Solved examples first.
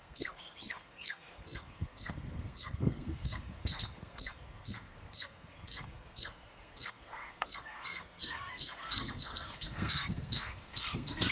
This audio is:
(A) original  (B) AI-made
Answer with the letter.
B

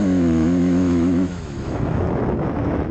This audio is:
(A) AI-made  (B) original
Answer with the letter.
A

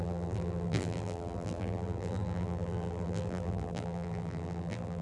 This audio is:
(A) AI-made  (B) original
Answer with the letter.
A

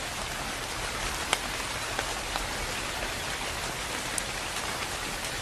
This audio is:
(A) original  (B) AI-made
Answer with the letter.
A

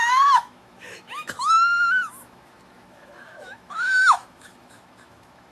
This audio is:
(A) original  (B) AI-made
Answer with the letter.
B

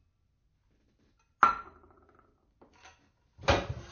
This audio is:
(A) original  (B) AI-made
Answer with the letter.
A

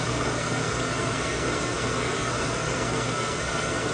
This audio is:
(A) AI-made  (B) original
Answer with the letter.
A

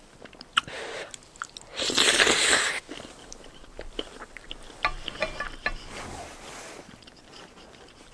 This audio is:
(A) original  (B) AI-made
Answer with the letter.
A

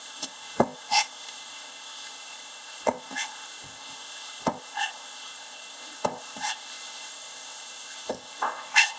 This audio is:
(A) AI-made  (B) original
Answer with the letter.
A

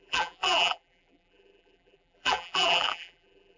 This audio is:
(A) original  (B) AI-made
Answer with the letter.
B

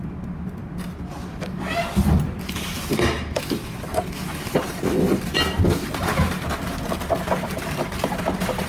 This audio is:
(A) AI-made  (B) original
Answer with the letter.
B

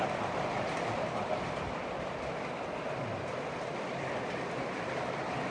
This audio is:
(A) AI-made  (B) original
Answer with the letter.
B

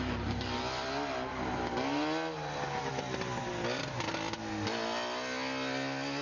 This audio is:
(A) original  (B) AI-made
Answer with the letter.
A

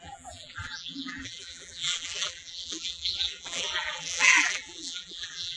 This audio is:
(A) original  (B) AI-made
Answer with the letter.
B